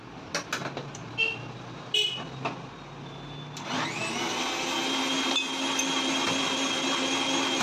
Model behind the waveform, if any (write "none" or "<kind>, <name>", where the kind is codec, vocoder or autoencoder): none